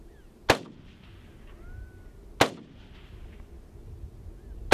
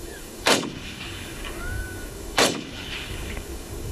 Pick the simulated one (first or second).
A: second